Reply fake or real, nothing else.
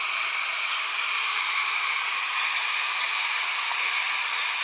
real